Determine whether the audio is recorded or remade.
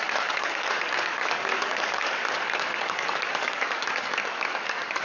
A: remade